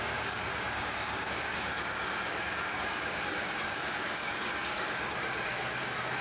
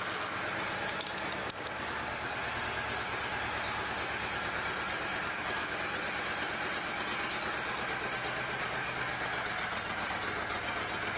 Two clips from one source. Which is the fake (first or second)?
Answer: first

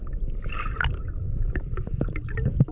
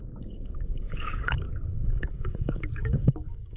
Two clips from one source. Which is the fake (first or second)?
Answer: second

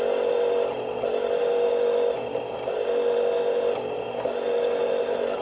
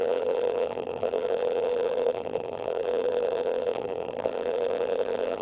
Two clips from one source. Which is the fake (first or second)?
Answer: second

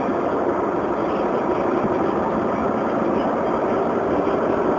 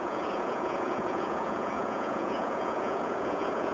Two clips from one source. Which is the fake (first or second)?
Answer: second